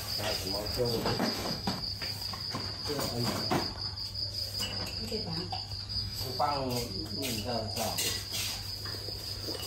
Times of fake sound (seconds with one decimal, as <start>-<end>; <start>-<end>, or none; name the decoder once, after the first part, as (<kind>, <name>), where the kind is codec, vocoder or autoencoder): 0.9-1.8 (codec, DAC); 5.9-6.4